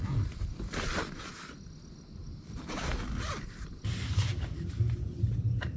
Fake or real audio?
real